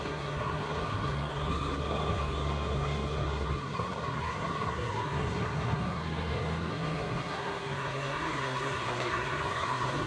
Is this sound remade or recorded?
remade